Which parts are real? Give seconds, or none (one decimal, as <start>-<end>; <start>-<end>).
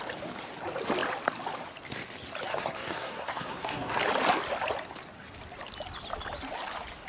0.0-2.5; 4.0-7.1